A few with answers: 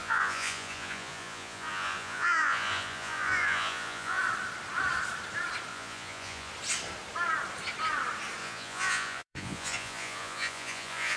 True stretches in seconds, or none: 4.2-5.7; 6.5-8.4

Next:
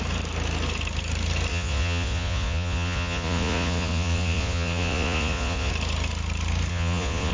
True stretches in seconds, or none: 0.0-1.5; 5.7-6.7